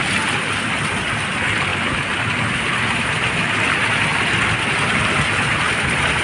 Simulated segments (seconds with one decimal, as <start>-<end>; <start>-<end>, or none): none